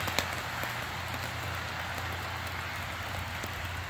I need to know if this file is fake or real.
real